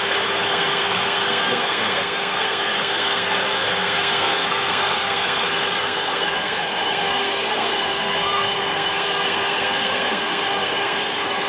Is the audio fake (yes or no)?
yes